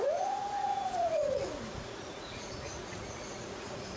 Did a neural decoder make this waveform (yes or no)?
yes